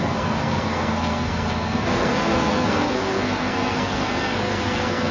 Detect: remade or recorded remade